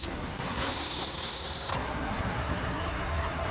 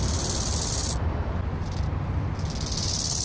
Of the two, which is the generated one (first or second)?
first